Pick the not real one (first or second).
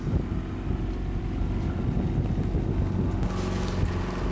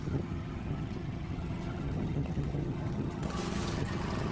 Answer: second